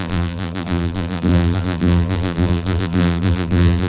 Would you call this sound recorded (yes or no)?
no